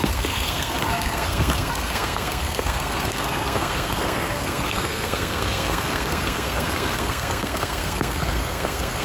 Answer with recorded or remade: remade